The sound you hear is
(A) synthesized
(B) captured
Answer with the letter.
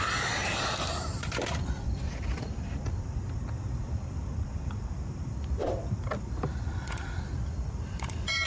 A